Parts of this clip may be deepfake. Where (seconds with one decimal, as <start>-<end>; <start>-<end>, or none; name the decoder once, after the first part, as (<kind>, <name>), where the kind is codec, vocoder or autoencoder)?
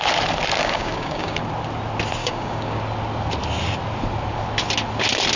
0.6-1.4 (codec, DAC); 2.2-2.8